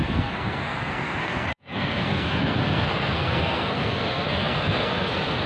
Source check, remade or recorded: remade